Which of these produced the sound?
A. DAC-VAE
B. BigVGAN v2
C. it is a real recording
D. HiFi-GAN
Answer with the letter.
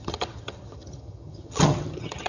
D